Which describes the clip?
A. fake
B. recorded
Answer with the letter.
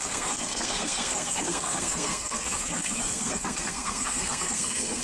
A